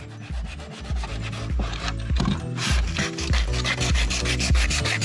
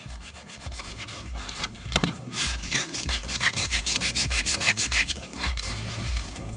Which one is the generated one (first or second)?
second